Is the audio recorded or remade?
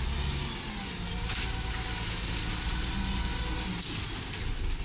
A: recorded